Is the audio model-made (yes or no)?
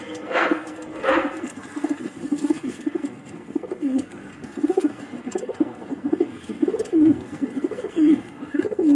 yes